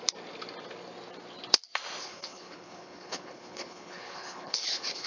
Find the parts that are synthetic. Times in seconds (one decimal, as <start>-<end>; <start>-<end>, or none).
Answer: 2.0-5.1

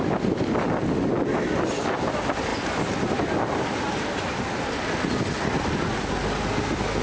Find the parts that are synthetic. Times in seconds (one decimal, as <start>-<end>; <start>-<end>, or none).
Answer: none

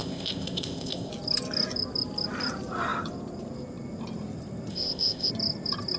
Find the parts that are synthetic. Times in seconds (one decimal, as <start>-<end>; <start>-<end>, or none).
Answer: 0.0-1.1; 4.7-5.3

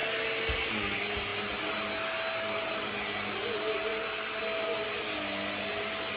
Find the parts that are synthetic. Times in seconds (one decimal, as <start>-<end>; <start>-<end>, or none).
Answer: none

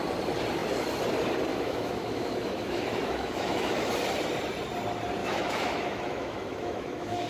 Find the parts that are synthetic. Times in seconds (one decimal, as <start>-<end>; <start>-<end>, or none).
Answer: 1.5-3.9; 5.2-7.3